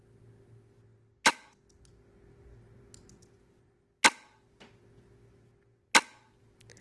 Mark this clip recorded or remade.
recorded